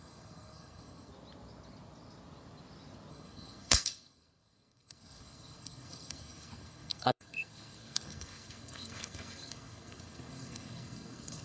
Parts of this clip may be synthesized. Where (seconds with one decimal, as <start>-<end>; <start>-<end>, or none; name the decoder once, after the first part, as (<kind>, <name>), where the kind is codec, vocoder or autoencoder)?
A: 0.0-1.1 (codec, SNAC); 3.1-11.4